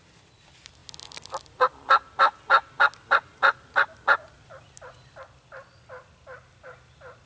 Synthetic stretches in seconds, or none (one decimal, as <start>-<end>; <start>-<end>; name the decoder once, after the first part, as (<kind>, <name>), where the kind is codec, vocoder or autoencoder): none